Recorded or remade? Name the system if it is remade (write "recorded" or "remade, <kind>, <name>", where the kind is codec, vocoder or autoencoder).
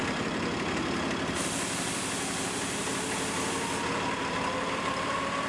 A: remade, vocoder, BigVGAN v2